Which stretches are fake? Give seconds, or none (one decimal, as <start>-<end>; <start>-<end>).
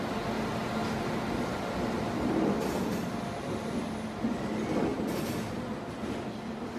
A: none